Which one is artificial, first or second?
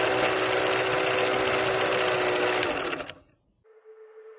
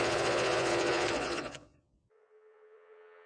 second